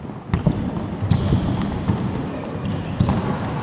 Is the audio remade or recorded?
recorded